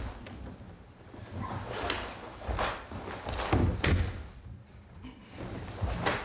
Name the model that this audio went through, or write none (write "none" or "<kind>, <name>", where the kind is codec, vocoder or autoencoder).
none